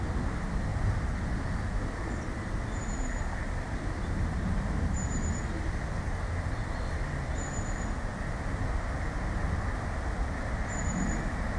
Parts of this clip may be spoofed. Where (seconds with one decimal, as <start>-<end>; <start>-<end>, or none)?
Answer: none